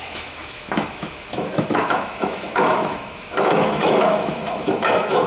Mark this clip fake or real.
fake